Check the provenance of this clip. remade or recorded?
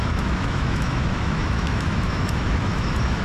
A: remade